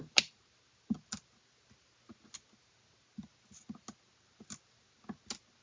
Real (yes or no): yes